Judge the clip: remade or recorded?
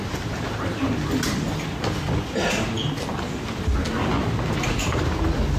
recorded